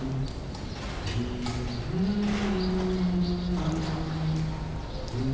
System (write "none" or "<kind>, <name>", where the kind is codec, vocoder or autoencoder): none